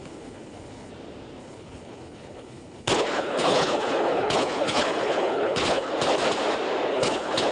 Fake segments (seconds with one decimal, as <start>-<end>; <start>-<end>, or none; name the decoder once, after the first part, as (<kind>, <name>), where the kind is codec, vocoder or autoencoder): 0.0-0.9 (codec, HILCodec); 1.4-5.9; 6.9-7.5